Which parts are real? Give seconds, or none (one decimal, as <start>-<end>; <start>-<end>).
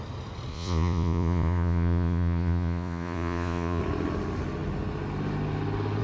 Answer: 0.0-0.5; 3.8-6.0